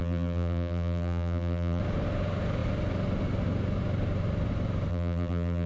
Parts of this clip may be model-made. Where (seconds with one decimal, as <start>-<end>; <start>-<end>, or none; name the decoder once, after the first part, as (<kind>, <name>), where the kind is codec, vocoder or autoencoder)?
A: 0.0-1.8 (vocoder, BigVGAN v2); 4.9-5.7